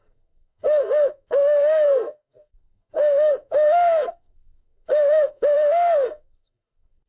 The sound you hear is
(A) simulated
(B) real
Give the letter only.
A